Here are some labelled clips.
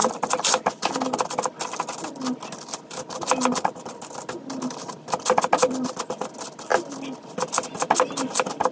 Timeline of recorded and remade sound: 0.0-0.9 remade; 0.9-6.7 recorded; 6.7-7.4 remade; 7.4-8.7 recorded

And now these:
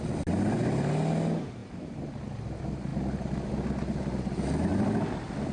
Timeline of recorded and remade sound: 0.0-2.9 recorded; 2.9-3.5 remade; 3.5-4.7 recorded; 4.7-5.5 remade

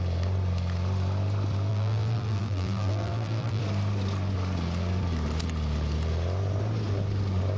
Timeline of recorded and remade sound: 0.0-1.7 recorded; 1.7-3.6 remade; 3.6-7.6 recorded

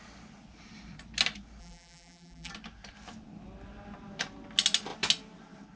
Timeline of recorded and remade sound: 0.0-1.6 recorded; 1.6-2.5 remade; 2.5-5.8 recorded

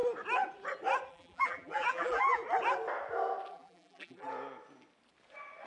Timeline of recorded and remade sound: 0.0-1.1 recorded; 1.1-2.4 remade; 2.4-3.5 recorded; 3.5-4.3 remade; 4.3-5.7 recorded

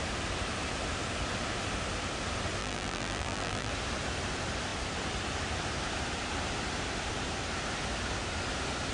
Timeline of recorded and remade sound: 0.0-2.6 recorded; 2.6-3.7 remade; 3.7-8.9 recorded

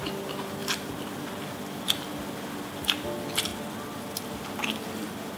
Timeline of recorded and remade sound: 0.0-5.4 recorded